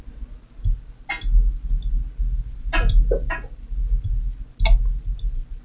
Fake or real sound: real